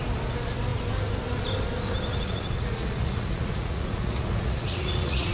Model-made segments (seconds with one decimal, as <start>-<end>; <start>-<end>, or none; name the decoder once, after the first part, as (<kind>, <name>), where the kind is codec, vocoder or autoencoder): 2.1-5.3 (vocoder, Vocos)